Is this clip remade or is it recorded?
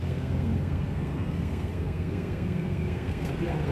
remade